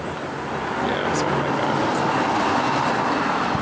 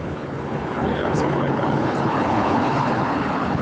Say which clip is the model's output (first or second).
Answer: second